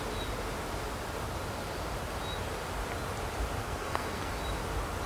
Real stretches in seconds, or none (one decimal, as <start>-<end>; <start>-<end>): 0.0-3.6; 4.3-5.1